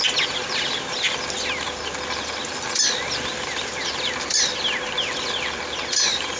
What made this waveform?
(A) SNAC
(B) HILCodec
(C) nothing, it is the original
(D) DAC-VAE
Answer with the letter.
C